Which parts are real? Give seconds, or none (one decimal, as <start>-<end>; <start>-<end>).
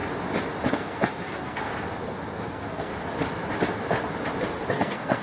0.0-0.7; 1.7-2.4; 2.9-4.7